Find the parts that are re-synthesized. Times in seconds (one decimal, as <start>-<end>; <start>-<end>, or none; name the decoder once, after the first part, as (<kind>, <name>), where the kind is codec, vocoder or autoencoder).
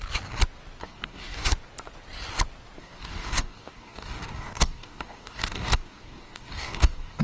0.8-1.5 (codec, DAC); 2.8-7.2